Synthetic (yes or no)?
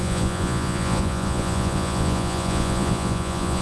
yes